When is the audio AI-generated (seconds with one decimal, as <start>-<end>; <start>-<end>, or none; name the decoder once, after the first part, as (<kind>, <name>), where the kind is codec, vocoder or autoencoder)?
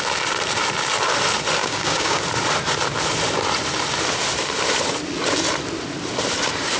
1.6-2.2 (codec, DAC)